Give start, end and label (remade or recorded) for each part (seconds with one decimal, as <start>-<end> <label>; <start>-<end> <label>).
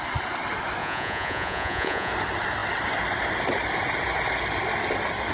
0.0-0.8 recorded; 0.8-2.1 remade; 2.1-5.3 recorded